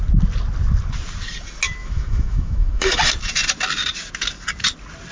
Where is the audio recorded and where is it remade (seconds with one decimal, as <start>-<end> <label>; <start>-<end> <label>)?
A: 0.0-1.8 recorded; 1.8-3.0 remade; 3.0-5.1 recorded